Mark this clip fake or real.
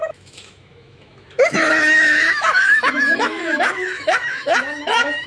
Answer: fake